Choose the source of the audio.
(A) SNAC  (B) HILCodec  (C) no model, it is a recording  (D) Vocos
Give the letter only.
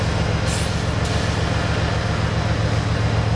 C